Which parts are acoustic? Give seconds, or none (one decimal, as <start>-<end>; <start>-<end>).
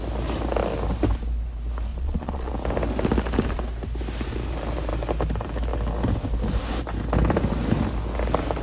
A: 0.0-1.9; 2.5-8.6